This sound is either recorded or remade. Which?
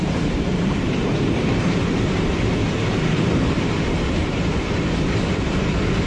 remade